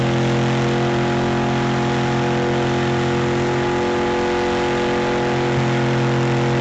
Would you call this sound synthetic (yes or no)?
no